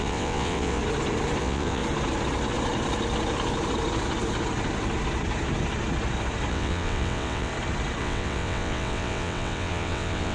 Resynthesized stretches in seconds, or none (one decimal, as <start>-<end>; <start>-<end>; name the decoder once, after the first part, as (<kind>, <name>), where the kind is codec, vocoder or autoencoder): 0.0-0.8 (vocoder, WaveNeXt); 1.4-1.8; 6.5-7.5; 8.0-10.3